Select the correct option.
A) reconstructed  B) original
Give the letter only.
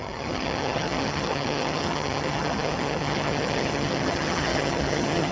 A